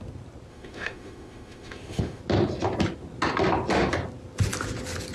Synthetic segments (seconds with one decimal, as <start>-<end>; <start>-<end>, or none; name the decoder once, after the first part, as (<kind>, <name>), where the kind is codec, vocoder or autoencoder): 0.5-2.2 (autoencoder, DAC-VAE)